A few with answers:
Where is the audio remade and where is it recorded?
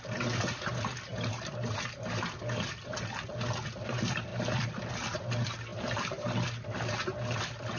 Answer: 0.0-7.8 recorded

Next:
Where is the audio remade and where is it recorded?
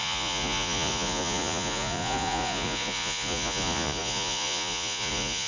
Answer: 0.0-5.5 remade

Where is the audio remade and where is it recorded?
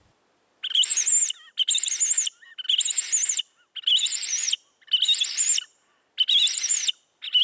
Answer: 0.0-7.4 recorded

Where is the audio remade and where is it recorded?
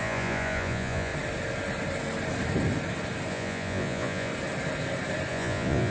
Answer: 0.0-1.1 remade; 1.1-3.3 recorded; 3.3-4.3 remade; 4.3-5.3 recorded; 5.3-5.9 remade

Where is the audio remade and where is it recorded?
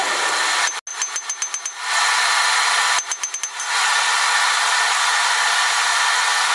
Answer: 0.0-6.5 recorded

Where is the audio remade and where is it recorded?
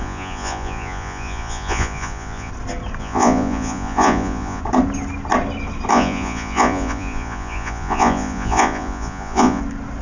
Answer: 0.0-2.5 remade; 2.5-3.0 recorded; 3.0-4.6 remade; 4.6-5.9 recorded; 5.9-9.6 remade; 9.6-10.0 recorded